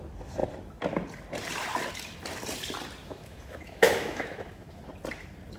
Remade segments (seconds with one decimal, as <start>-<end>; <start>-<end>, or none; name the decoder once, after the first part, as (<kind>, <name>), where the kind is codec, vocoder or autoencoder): 3.0-4.8 (autoencoder, DAC-VAE)